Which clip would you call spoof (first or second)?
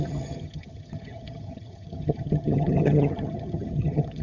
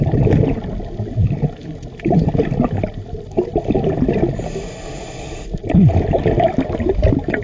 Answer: first